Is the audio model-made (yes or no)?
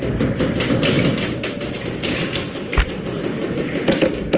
no